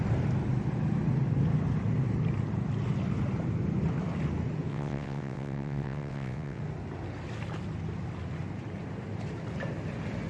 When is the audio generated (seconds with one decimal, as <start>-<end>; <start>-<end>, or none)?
4.7-6.6